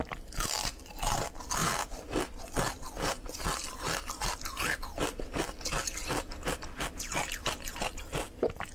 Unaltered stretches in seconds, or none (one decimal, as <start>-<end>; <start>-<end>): 0.0-8.7